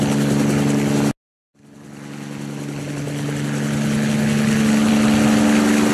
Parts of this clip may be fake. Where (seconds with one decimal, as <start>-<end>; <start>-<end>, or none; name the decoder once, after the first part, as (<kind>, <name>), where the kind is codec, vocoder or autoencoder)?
none